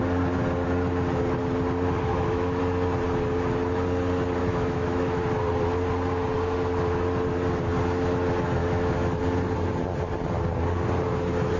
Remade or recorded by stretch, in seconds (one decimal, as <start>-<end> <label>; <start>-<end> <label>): 0.0-2.1 recorded; 2.1-2.6 remade; 2.6-4.4 recorded; 4.4-5.2 remade; 5.2-8.6 recorded; 8.6-9.2 remade; 9.2-11.6 recorded